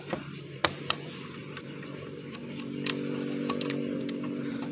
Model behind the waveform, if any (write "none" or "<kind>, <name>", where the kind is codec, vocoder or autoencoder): vocoder, BigVGAN v2